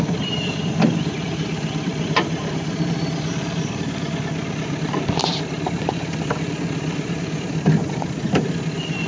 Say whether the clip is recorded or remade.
remade